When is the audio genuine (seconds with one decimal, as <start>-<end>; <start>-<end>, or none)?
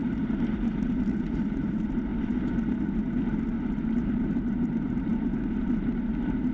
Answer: 2.1-3.7; 5.1-6.1